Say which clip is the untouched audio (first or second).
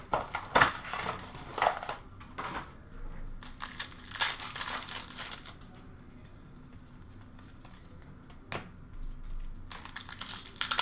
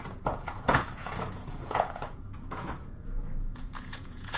first